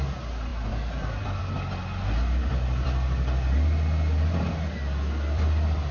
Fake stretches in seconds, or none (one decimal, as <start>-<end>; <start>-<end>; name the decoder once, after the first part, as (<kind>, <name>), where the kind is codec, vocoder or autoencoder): none